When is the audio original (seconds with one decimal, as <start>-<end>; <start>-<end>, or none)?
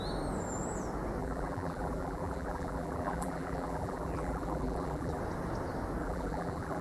0.0-1.2; 5.2-6.0